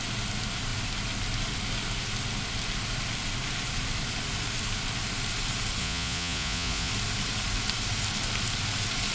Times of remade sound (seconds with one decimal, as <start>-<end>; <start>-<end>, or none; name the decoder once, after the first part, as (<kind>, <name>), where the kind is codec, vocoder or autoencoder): 5.8-6.9 (vocoder, Vocos)